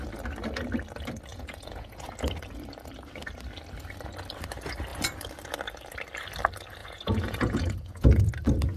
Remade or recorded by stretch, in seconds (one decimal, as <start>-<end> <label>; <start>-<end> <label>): 0.0-1.3 recorded; 1.3-2.1 remade; 2.1-6.8 recorded; 6.8-8.3 remade; 8.3-8.8 recorded